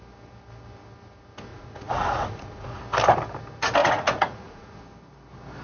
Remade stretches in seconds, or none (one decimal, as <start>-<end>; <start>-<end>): 1.5-2.8; 3.8-4.8